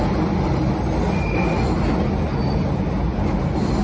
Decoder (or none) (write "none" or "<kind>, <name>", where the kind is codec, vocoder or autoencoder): none